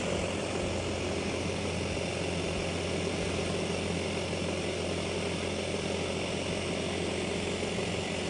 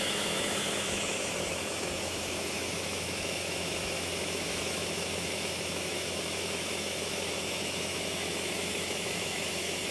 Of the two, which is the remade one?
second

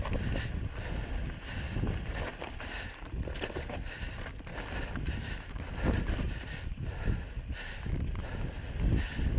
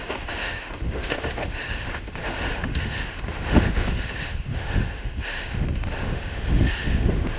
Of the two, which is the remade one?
second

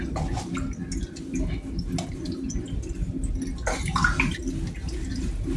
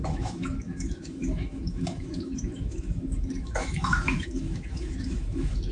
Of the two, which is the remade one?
second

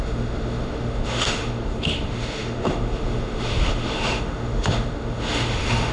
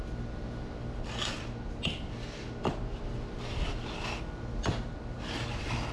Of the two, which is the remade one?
first